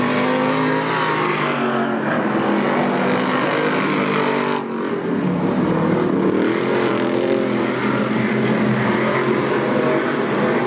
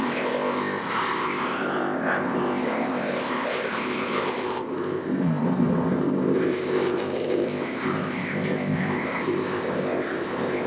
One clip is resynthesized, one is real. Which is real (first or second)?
first